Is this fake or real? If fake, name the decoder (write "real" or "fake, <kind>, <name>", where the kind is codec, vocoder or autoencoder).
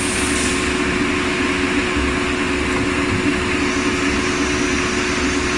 real